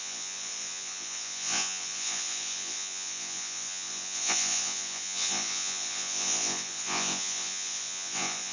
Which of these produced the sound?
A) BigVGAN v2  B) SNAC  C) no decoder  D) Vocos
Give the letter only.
D